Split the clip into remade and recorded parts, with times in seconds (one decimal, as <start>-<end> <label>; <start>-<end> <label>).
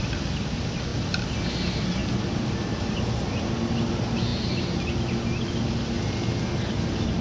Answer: 0.0-7.2 recorded